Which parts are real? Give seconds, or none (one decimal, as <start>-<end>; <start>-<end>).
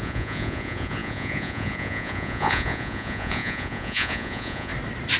4.7-5.2